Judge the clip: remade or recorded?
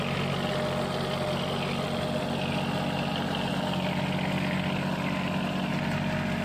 recorded